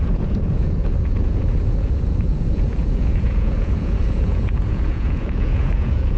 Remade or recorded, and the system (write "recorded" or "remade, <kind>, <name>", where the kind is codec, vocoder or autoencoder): remade, vocoder, Vocos